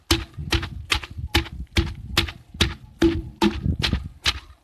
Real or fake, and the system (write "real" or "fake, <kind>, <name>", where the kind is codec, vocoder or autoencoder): real